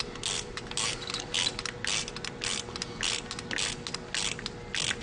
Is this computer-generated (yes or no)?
no